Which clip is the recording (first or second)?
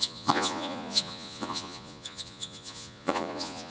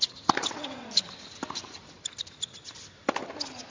second